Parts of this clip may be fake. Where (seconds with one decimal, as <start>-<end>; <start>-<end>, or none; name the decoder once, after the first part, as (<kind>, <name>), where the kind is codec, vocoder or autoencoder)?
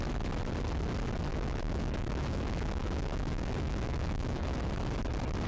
1.3-4.6 (autoencoder, DAC-VAE)